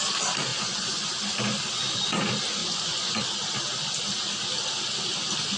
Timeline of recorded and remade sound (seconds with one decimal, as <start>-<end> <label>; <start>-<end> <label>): 0.0-0.5 recorded; 0.5-1.1 remade; 1.1-2.6 recorded; 2.6-3.2 remade; 3.2-5.6 recorded